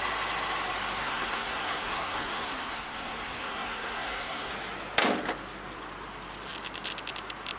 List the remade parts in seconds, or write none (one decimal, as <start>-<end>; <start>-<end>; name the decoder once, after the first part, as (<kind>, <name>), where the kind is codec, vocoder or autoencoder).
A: 1.0-4.5 (codec, SNAC)